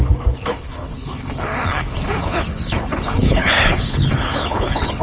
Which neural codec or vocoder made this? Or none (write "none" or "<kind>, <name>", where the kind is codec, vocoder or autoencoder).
codec, HILCodec